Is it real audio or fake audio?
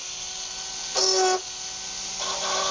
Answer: real